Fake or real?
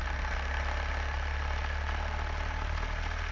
real